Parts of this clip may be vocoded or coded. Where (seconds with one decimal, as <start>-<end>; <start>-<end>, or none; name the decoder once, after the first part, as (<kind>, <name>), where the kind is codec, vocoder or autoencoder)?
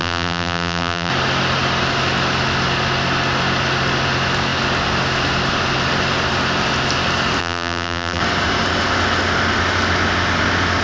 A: 0.0-1.1 (vocoder, BigVGAN v2); 7.4-8.2